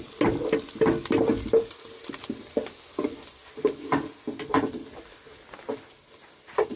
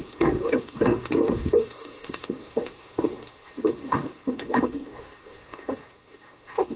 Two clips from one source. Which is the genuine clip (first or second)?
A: first